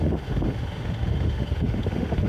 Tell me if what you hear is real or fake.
fake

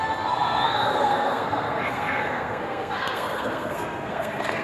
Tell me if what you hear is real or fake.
fake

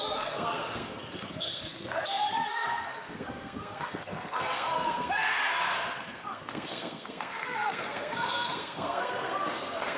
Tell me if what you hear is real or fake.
fake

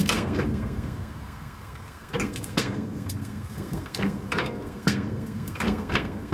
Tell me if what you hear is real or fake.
fake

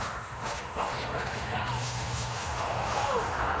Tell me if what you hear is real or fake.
fake